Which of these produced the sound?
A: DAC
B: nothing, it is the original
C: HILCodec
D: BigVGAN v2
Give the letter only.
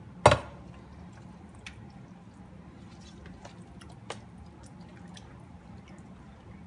B